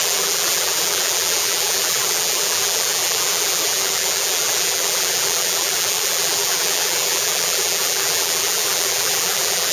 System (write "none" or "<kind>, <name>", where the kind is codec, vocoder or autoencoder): vocoder, BigVGAN v2